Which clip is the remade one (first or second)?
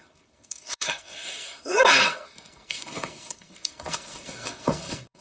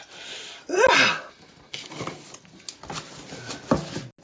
first